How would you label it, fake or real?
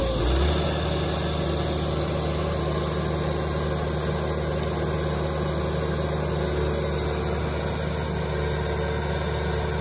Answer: real